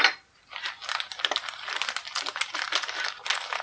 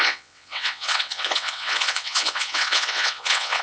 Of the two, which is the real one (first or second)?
first